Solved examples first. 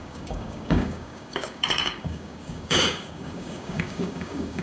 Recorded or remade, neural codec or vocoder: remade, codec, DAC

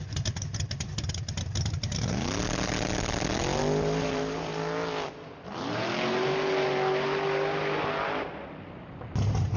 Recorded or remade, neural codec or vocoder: recorded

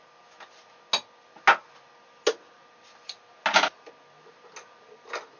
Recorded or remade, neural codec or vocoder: recorded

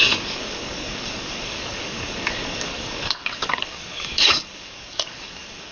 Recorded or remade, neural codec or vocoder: remade, codec, DAC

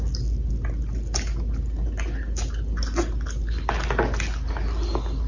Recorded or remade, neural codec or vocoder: recorded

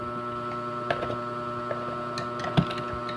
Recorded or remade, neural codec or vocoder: recorded